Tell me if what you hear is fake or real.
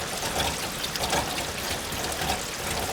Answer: real